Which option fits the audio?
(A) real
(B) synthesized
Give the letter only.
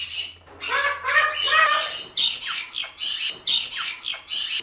A